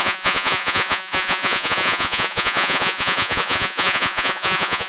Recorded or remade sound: remade